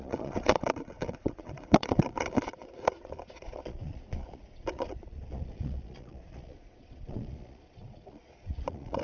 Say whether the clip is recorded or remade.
remade